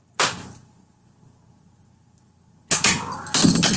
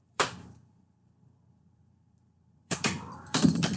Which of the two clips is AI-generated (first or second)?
second